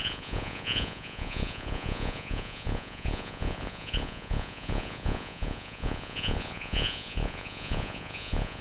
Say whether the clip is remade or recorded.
remade